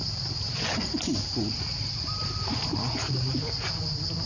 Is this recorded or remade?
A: recorded